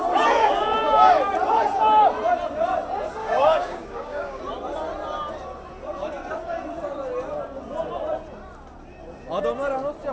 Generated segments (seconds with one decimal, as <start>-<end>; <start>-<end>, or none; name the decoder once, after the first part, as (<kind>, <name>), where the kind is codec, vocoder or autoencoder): 0.4-1.1 (codec, DAC); 3.2-4.4